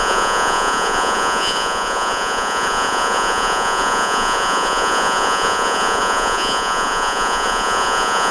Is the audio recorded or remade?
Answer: remade